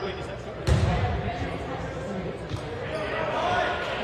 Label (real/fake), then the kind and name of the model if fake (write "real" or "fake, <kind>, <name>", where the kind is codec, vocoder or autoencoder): fake, vocoder, BigVGAN v2